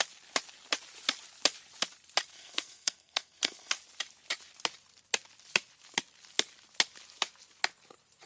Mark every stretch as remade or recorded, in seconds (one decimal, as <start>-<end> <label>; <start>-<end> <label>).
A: 0.0-2.3 recorded; 2.3-3.7 remade; 3.7-8.3 recorded